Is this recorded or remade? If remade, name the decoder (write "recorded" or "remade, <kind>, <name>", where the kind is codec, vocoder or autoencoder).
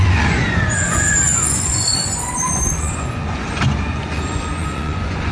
remade, vocoder, Vocos